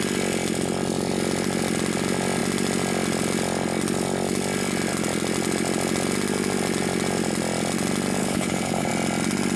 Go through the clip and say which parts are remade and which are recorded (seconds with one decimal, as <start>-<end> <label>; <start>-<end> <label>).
0.0-8.2 recorded; 8.2-8.9 remade; 8.9-9.6 recorded